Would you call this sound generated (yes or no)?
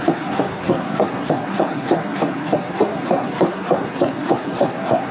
yes